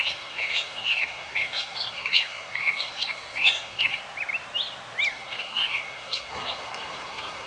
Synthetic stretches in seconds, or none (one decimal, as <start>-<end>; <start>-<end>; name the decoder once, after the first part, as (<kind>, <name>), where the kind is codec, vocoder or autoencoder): 0.0-4.0 (codec, SNAC); 5.1-7.5